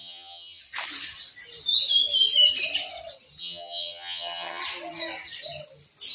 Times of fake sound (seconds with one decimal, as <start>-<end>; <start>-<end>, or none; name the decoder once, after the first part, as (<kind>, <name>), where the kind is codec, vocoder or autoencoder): 0.0-0.6 (vocoder, HiFi-GAN); 3.4-4.6